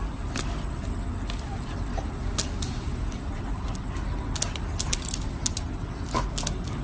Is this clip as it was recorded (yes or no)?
yes